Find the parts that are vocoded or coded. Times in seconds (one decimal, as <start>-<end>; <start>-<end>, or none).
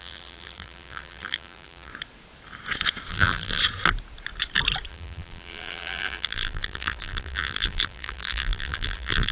0.0-1.9; 3.1-3.6; 4.9-9.3